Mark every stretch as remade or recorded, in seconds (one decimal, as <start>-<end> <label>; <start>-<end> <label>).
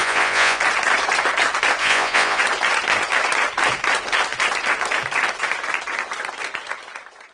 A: 0.0-0.6 remade; 0.6-1.8 recorded; 1.8-2.4 remade; 2.4-7.3 recorded